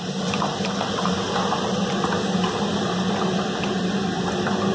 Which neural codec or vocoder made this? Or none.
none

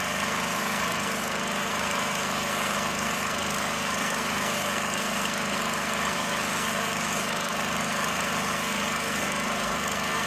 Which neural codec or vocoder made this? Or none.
codec, SNAC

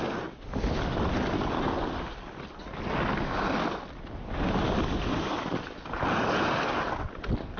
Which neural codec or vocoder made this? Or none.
none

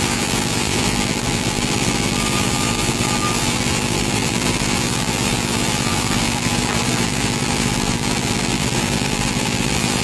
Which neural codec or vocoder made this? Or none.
vocoder, BigVGAN v2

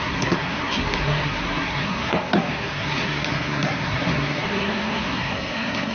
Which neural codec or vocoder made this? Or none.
codec, SNAC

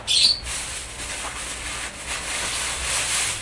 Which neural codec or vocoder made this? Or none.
none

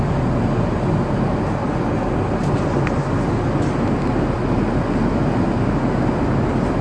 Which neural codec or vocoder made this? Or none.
none